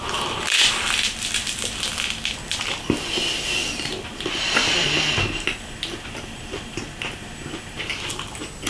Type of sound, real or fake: real